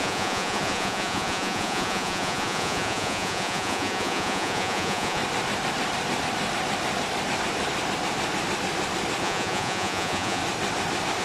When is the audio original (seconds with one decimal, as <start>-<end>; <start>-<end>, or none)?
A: 5.2-9.2; 10.4-11.2